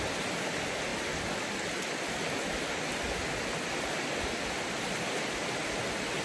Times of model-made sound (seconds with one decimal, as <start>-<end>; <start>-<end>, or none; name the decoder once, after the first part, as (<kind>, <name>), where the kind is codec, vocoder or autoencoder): none